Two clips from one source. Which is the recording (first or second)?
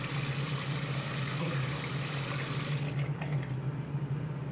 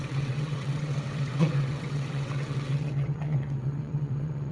first